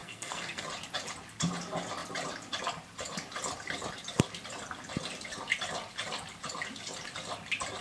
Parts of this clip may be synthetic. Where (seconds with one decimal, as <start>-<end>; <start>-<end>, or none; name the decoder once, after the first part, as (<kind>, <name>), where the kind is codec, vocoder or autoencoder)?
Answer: 0.0-0.6 (codec, SNAC)